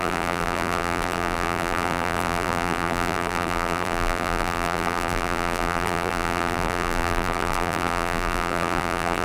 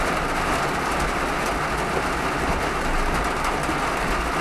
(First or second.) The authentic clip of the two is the second